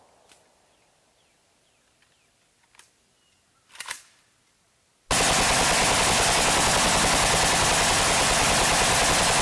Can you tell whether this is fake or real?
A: real